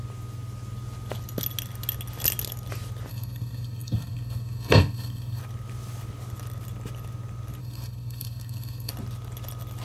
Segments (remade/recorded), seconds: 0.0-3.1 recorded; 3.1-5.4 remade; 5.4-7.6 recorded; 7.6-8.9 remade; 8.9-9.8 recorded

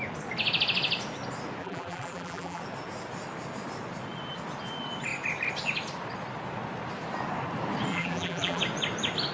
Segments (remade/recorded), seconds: 0.0-1.6 recorded; 1.6-2.6 remade; 2.6-7.9 recorded; 7.9-8.6 remade; 8.6-9.3 recorded

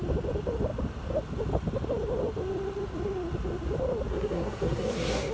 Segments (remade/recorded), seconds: 0.0-4.1 recorded; 4.1-5.3 remade